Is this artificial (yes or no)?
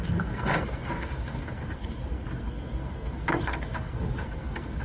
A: yes